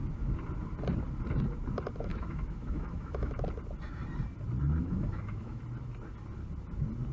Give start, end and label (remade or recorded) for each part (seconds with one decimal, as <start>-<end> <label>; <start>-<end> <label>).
0.0-2.1 recorded; 2.1-3.3 remade; 3.3-4.8 recorded; 4.8-5.6 remade; 5.6-7.1 recorded